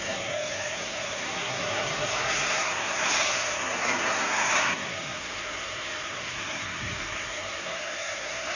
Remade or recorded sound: remade